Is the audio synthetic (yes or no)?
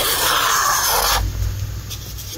no